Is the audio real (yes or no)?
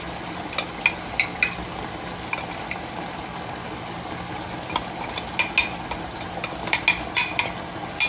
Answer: yes